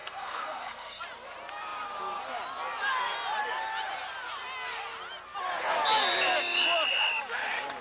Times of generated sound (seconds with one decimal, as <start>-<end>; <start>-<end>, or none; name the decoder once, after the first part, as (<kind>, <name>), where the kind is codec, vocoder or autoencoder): 0.0-1.0 (codec, SNAC)